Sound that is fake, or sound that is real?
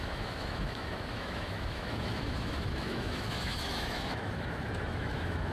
fake